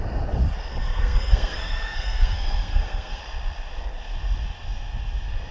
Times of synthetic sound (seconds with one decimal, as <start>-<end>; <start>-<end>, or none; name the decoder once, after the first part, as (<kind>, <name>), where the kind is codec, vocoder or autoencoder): 0.7-3.2 (codec, SNAC)